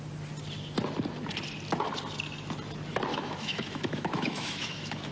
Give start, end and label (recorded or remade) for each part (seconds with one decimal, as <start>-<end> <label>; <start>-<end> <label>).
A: 0.0-3.1 recorded; 3.1-5.1 remade